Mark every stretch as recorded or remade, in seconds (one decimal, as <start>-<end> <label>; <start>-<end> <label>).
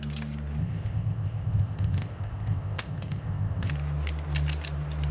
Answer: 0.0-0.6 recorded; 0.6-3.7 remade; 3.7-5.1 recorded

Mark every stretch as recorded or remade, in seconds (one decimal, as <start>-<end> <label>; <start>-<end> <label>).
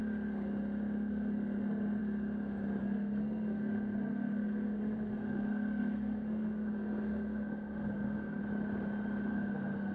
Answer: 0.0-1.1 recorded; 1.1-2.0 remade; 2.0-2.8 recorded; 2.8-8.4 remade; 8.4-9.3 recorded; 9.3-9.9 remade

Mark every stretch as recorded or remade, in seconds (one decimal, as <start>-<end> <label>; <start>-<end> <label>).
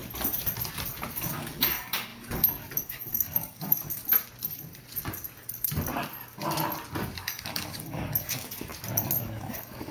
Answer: 0.0-1.1 recorded; 1.1-4.0 remade; 4.0-7.2 recorded; 7.2-8.7 remade; 8.7-9.2 recorded; 9.2-9.9 remade